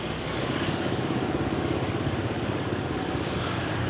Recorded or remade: remade